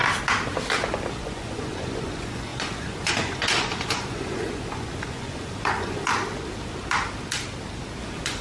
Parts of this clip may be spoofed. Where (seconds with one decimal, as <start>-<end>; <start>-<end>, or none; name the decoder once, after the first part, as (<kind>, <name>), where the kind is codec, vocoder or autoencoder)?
1.1-6.1 (vocoder, Vocos); 8.0-8.4